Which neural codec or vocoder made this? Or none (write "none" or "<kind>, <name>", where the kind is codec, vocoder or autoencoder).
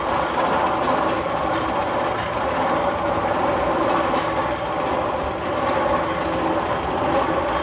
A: none